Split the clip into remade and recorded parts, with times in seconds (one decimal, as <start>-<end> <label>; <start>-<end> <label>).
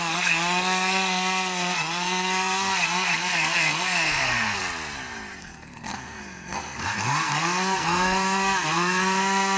0.0-4.6 remade; 4.6-5.4 recorded; 5.4-9.6 remade